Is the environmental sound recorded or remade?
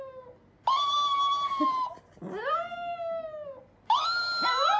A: recorded